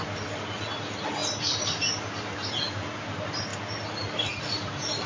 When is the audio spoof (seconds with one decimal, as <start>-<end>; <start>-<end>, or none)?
none